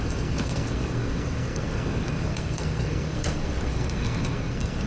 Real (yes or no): no